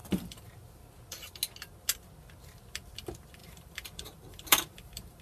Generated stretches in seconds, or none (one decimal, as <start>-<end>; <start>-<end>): 3.4-5.2